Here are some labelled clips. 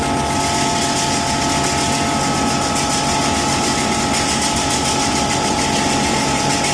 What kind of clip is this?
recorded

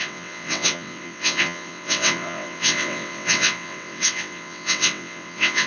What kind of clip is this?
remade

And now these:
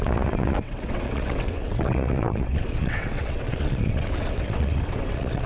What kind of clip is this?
remade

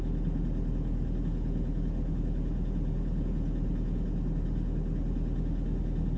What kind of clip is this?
recorded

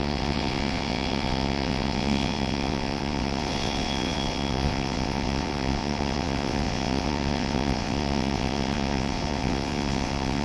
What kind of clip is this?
remade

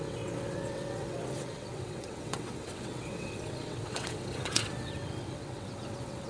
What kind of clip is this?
remade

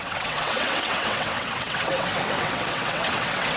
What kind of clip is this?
remade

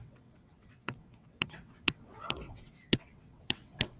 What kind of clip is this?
remade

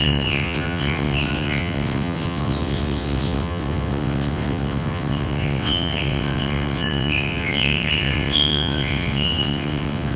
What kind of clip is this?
remade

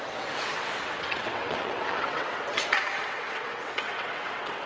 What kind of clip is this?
remade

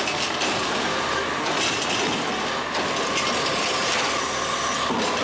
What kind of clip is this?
recorded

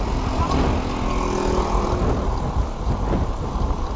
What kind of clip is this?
recorded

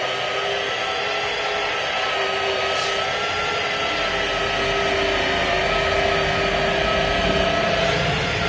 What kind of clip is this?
recorded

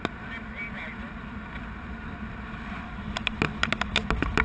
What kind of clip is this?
recorded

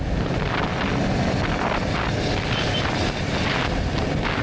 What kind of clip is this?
recorded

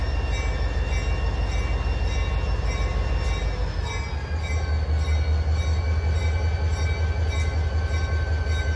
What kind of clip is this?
recorded